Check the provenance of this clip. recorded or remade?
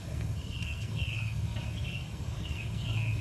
remade